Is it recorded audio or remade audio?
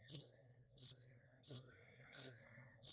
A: remade